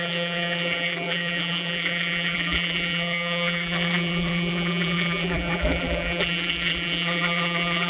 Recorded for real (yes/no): no